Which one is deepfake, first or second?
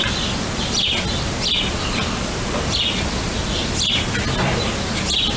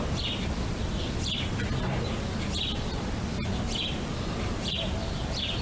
second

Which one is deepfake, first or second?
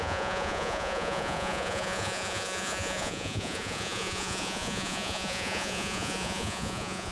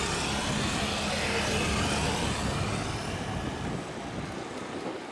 first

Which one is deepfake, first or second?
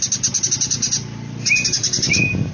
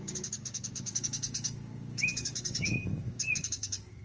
second